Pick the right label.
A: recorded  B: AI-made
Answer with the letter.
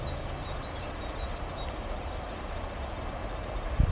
A